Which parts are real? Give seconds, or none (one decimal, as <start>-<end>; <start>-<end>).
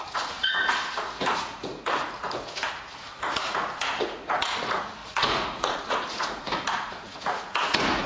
none